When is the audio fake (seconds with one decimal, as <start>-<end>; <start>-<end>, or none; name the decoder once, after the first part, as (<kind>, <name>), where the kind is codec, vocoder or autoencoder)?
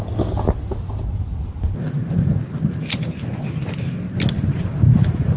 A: none